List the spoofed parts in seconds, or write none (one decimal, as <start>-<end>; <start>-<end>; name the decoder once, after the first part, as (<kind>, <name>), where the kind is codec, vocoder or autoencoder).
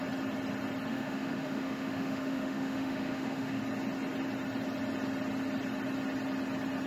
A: 0.9-3.6 (autoencoder, DAC-VAE)